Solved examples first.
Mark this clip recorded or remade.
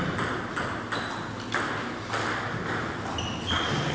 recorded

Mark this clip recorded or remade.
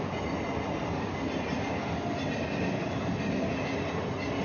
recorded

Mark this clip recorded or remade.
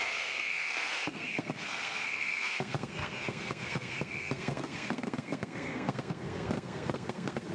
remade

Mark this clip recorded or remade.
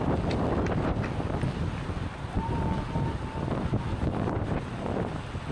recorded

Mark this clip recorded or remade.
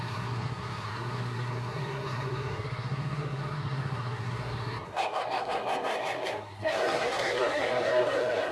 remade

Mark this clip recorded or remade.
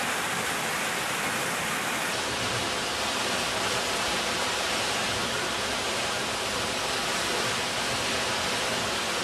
recorded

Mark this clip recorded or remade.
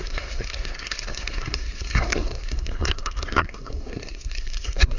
remade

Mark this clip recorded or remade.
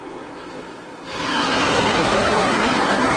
remade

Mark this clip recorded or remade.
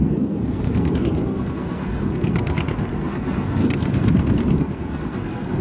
remade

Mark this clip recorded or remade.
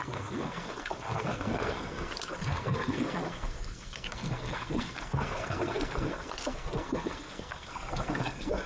remade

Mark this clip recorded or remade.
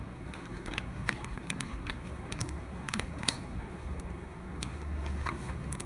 remade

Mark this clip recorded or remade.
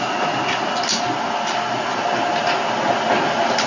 recorded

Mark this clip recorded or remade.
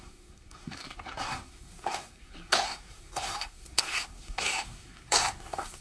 remade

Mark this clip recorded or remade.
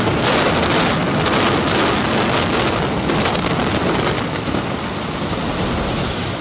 recorded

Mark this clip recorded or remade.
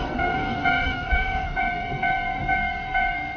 remade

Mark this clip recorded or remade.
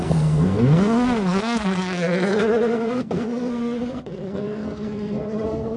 remade